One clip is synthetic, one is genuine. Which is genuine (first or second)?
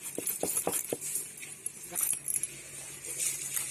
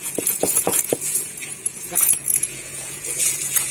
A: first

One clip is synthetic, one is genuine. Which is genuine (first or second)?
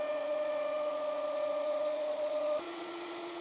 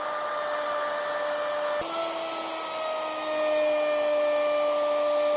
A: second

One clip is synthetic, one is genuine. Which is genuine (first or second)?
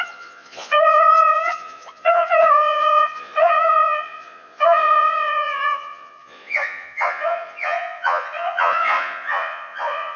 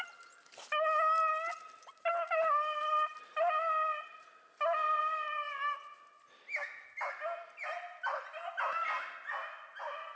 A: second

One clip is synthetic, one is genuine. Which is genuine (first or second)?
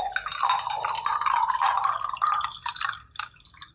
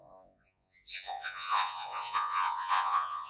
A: first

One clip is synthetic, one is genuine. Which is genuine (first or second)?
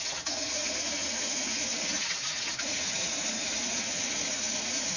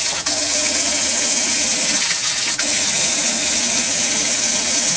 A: second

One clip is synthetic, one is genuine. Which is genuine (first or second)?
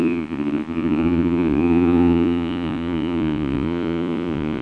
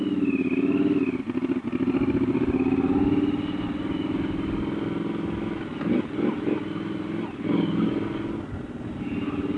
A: second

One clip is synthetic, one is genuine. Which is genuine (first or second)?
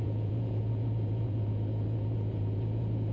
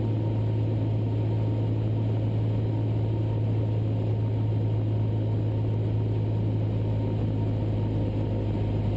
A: second